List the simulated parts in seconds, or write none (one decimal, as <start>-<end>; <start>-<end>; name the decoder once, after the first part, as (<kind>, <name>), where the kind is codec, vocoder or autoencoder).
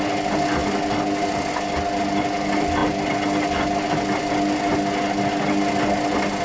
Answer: none